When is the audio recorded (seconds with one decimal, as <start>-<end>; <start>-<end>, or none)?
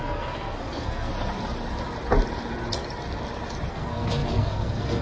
1.1-3.7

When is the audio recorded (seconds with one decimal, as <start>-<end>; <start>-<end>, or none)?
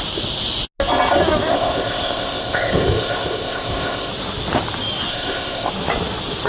0.0-1.5; 4.1-5.1; 5.7-6.5